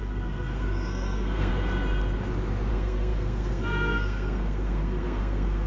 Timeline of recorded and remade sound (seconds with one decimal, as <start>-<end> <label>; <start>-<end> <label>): 0.0-1.5 remade; 1.5-2.7 recorded; 2.7-5.7 remade